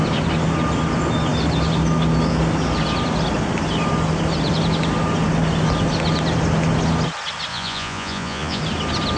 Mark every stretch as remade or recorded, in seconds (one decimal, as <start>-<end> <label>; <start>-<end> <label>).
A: 0.0-7.5 recorded; 7.5-8.6 remade; 8.6-9.2 recorded